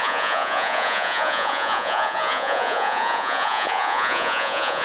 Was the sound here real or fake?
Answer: fake